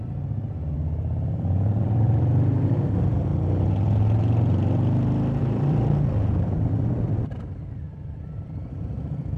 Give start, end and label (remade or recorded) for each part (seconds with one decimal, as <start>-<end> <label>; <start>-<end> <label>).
0.0-3.3 remade; 3.3-5.4 recorded; 5.4-9.4 remade

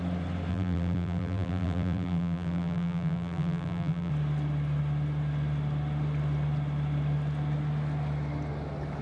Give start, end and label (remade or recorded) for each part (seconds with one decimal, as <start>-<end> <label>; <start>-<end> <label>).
0.0-0.5 recorded; 0.5-4.1 remade; 4.1-9.0 recorded

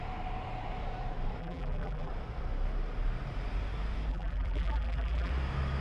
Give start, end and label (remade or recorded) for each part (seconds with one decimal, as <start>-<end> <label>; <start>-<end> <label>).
0.0-1.4 recorded; 1.4-2.1 remade; 2.1-4.1 recorded; 4.1-5.3 remade; 5.3-5.8 recorded

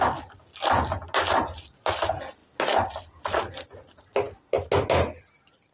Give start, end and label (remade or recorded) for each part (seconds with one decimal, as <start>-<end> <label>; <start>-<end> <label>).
0.0-5.7 recorded

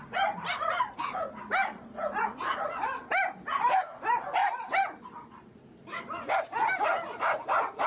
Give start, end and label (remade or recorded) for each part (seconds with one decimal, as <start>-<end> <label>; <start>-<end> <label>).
0.0-3.1 remade; 3.1-4.4 recorded; 4.4-6.0 remade; 6.0-7.9 recorded